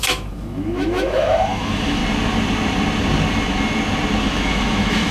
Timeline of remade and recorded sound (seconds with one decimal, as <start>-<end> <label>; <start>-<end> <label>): 0.0-2.0 remade; 2.0-4.2 recorded; 4.2-5.1 remade